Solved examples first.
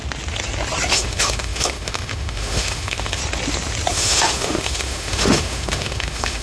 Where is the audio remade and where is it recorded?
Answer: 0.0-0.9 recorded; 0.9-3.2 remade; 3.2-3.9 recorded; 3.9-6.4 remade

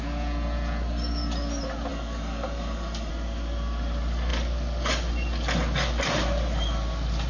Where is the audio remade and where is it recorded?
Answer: 0.0-1.9 recorded; 1.9-3.1 remade; 3.1-7.3 recorded